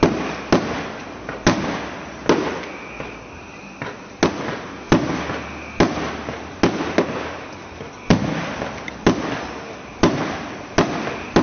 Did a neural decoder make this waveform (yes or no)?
no